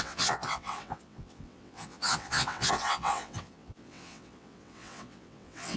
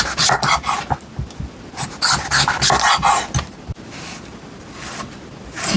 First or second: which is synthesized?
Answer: first